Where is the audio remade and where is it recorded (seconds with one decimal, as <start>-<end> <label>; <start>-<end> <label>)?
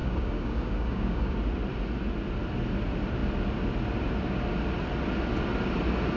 0.0-1.3 remade; 1.3-6.2 recorded